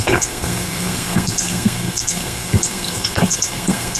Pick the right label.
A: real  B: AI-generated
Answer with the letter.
B